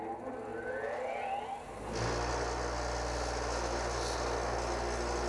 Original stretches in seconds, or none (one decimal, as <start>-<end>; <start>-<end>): 0.0-5.3